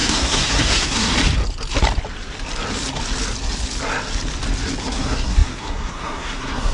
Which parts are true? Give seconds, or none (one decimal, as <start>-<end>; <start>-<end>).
1.1-4.8